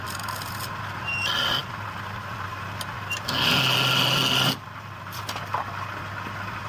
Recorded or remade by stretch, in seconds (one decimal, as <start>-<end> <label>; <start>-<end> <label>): 0.0-6.7 recorded